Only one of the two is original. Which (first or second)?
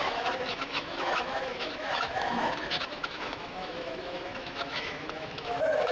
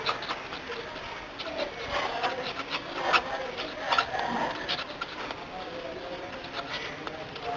second